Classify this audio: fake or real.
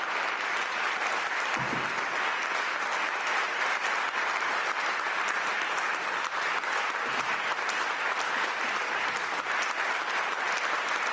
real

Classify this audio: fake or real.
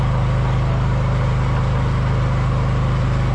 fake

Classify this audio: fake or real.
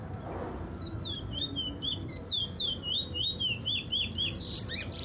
fake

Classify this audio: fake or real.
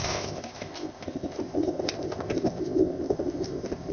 fake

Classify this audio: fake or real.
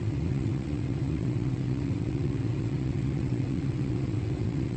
fake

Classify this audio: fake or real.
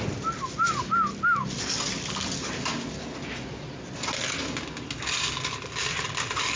real